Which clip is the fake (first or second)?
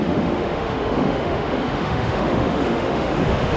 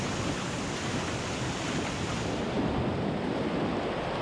first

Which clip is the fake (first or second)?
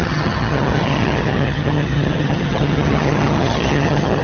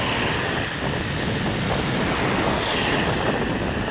first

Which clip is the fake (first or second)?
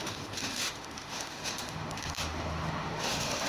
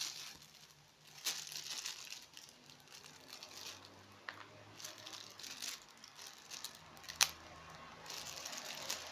first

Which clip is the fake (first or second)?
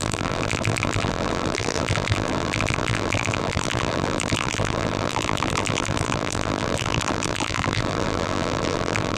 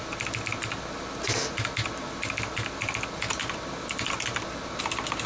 first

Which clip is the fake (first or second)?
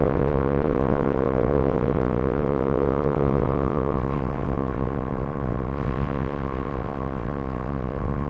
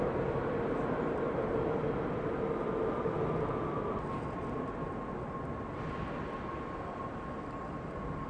first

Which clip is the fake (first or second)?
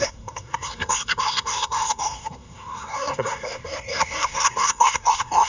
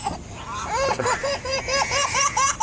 first